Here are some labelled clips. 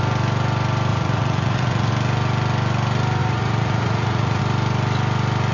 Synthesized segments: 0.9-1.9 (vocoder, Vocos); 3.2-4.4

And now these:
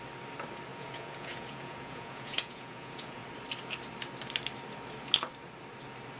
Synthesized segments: 0.7-3.2 (vocoder, Vocos)